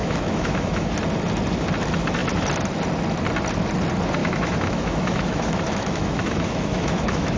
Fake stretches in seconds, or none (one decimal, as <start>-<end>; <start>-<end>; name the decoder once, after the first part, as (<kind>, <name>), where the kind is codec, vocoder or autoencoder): 0.0-0.9 (autoencoder, DAC-VAE); 4.2-7.4